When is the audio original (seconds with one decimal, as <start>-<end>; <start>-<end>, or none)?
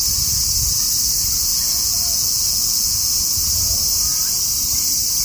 0.0-1.5; 3.1-5.2